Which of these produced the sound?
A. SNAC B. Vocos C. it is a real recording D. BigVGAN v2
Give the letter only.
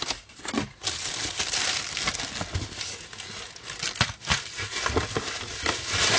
C